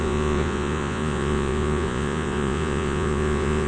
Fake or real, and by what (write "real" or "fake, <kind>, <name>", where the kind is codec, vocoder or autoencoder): fake, vocoder, Vocos